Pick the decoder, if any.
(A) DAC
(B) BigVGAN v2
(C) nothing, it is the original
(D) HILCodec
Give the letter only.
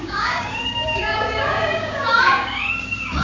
A